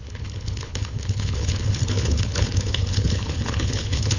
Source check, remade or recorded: remade